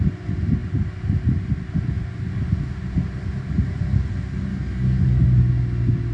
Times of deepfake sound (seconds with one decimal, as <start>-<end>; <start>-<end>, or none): 4.5-5.5